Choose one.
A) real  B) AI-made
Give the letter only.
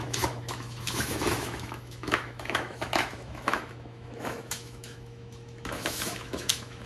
B